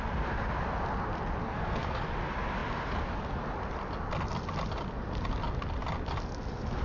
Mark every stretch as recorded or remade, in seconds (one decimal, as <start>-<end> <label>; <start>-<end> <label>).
0.0-1.4 recorded; 1.4-2.0 remade; 2.0-6.8 recorded

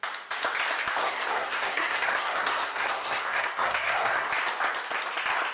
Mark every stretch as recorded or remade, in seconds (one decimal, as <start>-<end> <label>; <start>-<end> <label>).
0.0-1.0 recorded; 1.0-4.3 remade; 4.3-5.5 recorded